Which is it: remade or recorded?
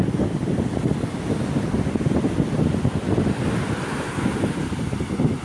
recorded